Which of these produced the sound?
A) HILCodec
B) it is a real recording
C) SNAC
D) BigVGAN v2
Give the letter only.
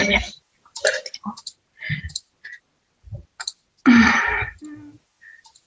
B